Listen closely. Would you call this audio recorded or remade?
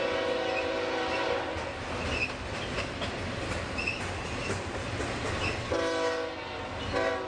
recorded